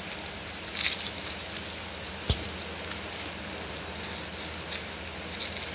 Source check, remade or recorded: recorded